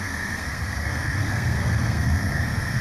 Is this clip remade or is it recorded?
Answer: remade